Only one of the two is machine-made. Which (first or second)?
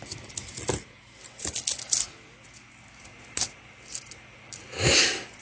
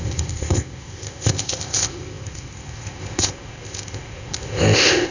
second